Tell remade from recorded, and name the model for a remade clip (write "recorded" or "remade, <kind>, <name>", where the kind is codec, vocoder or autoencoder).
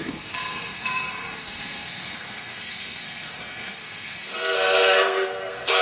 remade, codec, SNAC